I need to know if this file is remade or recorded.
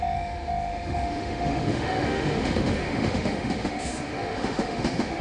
remade